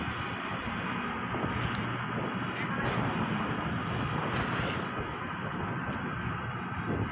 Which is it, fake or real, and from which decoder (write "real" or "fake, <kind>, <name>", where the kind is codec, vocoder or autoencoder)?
real